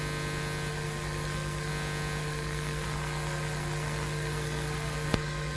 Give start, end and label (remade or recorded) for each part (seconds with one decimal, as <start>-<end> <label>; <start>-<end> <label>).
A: 0.0-0.7 recorded; 0.7-1.7 remade; 1.7-2.2 recorded; 2.2-5.6 remade